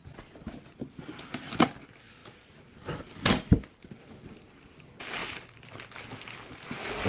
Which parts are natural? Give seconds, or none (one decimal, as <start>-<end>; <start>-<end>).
0.0-7.1